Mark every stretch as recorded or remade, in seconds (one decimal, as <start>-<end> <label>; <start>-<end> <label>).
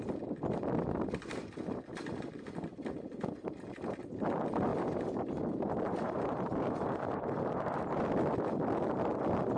0.0-4.7 recorded; 4.7-8.1 remade; 8.1-9.6 recorded